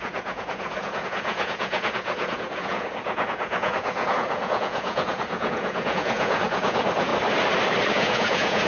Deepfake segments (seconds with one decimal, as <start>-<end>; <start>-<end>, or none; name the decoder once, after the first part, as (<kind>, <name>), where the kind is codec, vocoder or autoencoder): 0.0-7.1 (vocoder, Vocos); 7.9-8.7